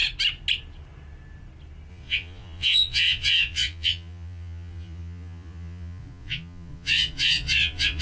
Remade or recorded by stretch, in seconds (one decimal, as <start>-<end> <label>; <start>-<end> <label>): 0.0-1.9 recorded; 1.9-8.0 remade